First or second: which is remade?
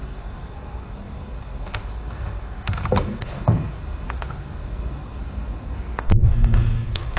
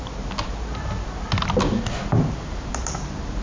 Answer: first